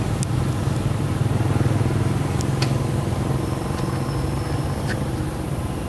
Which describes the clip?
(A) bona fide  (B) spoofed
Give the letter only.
A